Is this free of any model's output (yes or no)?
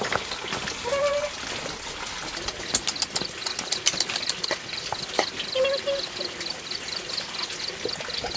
yes